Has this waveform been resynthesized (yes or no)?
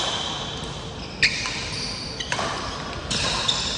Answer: yes